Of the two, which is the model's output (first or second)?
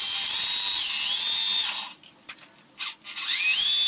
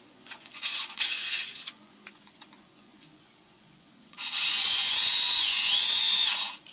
second